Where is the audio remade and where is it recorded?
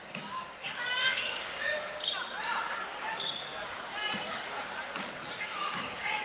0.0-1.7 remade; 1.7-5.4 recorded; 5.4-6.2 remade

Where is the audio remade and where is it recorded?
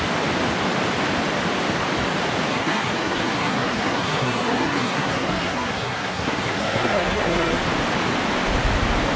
0.0-2.5 recorded; 2.5-7.6 remade; 7.6-9.2 recorded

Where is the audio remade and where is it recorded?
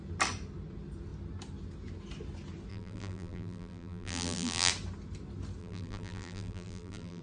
0.0-2.7 recorded; 2.7-4.7 remade; 4.7-5.6 recorded; 5.6-7.2 remade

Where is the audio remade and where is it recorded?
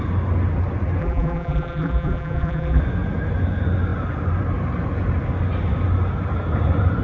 0.0-1.0 recorded; 1.0-2.8 remade; 2.8-7.0 recorded